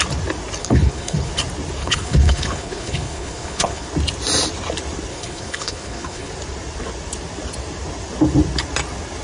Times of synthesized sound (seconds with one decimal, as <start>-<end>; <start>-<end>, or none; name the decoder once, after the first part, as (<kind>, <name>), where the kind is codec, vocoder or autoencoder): 0.6-1.3 (codec, HILCodec); 1.8-3.9; 5.1-6.3